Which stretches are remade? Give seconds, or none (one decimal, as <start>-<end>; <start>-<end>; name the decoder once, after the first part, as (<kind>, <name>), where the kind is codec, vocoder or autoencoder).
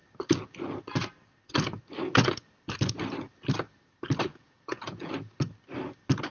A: 4.3-5.1 (vocoder, Vocos)